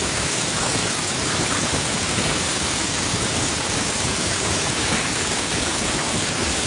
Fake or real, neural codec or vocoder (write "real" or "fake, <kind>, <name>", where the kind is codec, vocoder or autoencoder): fake, codec, DAC